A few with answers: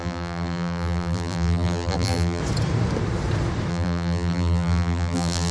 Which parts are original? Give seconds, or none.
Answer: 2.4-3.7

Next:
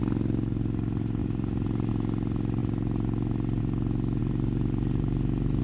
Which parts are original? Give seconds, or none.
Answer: 0.0-1.2; 1.9-2.6; 3.6-4.2

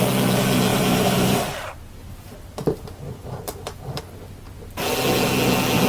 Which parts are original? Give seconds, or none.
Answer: 0.0-0.7; 4.0-5.9

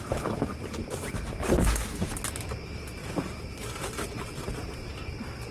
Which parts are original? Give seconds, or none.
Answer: 0.0-3.0

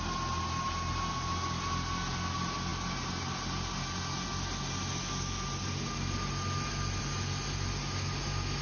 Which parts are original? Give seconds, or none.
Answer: 0.0-8.6

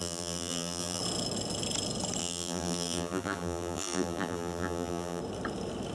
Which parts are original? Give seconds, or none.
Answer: 1.0-2.2; 5.2-5.9